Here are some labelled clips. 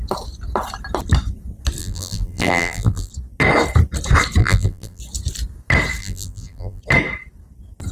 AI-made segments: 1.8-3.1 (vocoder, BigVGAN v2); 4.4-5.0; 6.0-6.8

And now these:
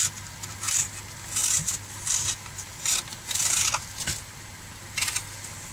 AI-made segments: none

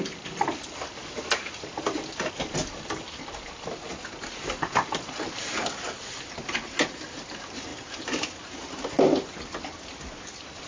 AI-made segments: 7.7-10.0 (vocoder, BigVGAN v2)